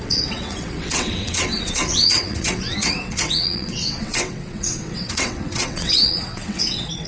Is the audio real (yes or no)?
no